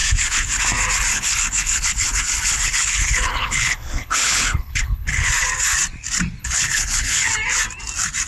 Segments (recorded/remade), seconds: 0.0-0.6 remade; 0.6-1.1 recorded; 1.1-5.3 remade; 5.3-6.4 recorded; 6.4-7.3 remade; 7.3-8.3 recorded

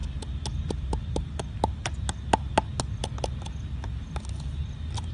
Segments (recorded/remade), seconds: 0.0-5.1 recorded

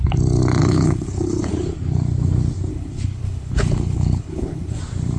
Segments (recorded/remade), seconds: 0.0-0.6 recorded; 0.6-1.5 remade; 1.5-2.7 recorded; 2.7-4.8 remade; 4.8-5.2 recorded